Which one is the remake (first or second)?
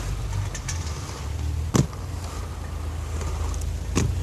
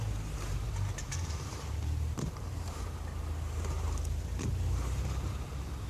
second